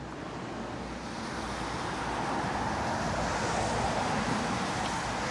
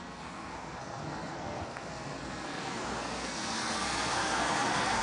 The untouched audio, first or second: first